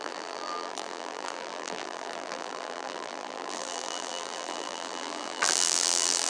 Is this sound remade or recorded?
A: remade